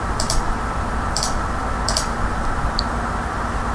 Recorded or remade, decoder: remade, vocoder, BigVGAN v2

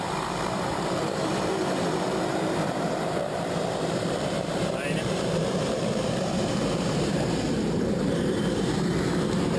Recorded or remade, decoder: remade, vocoder, BigVGAN v2